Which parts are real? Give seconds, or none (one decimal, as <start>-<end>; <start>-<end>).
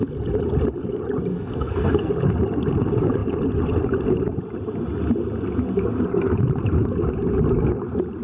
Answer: 0.0-1.3; 2.1-8.2